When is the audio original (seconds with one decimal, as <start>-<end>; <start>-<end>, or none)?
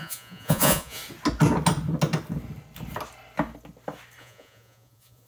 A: 1.0-4.2